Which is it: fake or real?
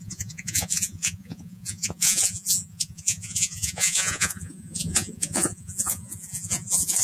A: fake